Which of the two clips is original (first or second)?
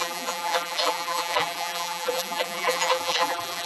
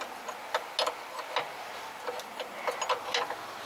second